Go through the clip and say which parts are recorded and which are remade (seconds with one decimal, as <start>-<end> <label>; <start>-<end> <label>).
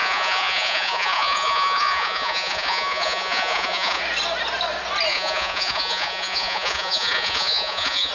0.0-4.0 remade; 4.0-5.1 recorded; 5.1-8.1 remade